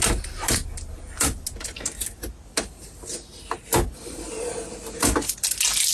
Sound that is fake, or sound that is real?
real